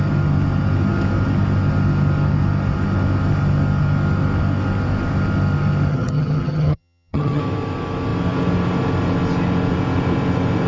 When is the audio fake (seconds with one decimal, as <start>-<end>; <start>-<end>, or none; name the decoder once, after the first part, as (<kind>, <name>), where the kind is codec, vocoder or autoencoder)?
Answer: 5.9-7.4 (vocoder, HiFi-GAN)